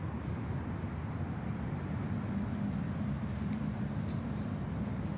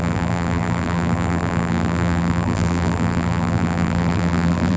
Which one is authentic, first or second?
first